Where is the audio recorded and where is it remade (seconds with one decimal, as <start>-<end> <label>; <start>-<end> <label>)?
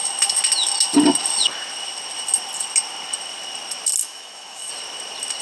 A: 0.0-4.0 recorded; 4.0-4.7 remade; 4.7-5.4 recorded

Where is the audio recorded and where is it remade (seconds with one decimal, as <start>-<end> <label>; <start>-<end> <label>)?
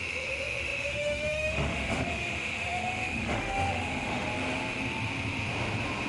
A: 0.0-4.3 remade; 4.3-6.1 recorded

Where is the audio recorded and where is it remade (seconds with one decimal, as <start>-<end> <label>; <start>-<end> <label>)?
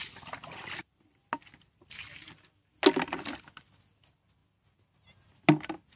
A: 0.0-6.0 recorded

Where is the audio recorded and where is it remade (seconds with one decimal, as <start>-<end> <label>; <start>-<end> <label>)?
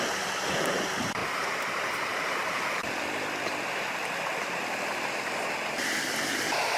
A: 0.0-1.2 recorded; 1.2-3.0 remade; 3.0-6.8 recorded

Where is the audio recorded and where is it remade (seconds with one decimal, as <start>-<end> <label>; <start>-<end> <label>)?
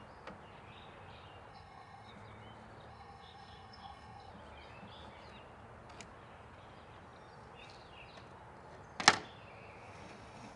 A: 0.0-1.5 recorded; 1.5-2.1 remade; 2.1-2.9 recorded; 2.9-4.3 remade; 4.3-10.6 recorded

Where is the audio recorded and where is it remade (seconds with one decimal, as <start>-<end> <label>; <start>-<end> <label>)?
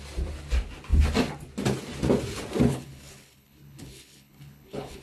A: 0.0-2.7 recorded; 2.7-5.0 remade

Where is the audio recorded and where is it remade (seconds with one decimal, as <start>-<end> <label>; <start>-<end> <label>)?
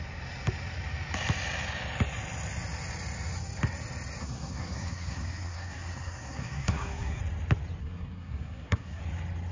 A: 0.0-4.2 recorded; 4.2-7.2 remade; 7.2-7.8 recorded; 7.8-9.0 remade; 9.0-9.5 recorded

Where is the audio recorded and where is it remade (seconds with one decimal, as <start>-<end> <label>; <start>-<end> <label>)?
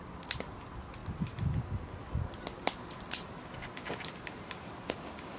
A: 0.0-5.4 recorded